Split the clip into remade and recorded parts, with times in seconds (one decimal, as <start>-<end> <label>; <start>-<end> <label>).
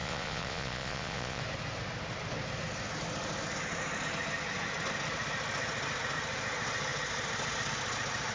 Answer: 0.0-1.4 remade; 1.4-8.3 recorded